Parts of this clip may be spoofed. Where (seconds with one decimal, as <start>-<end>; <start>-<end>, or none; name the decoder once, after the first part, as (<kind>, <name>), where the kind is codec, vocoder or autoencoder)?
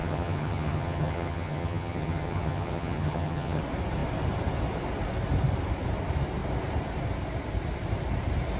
0.0-3.6 (vocoder, HiFi-GAN)